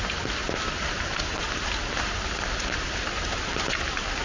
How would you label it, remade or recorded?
recorded